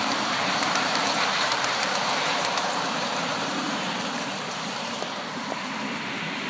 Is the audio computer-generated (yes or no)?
yes